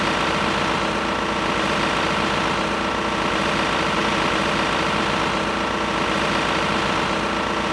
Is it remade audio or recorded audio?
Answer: recorded